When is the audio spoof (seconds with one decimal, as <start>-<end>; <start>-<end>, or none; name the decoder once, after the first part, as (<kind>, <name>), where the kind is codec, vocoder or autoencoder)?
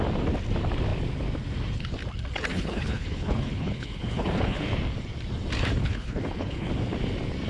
2.5-4.7 (codec, HILCodec); 5.8-6.7